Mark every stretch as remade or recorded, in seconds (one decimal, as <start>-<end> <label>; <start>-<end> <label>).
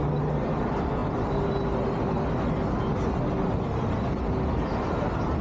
0.0-5.4 recorded